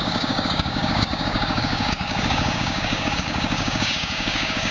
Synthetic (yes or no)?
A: yes